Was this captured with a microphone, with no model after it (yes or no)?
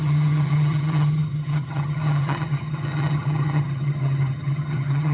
no